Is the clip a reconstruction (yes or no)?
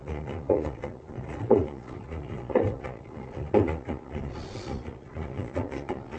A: yes